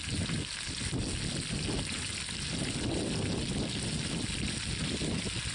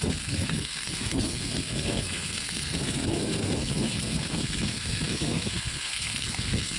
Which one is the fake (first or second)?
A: second